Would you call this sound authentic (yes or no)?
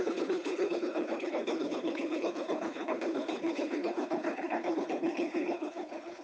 no